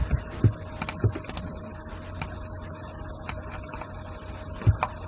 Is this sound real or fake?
real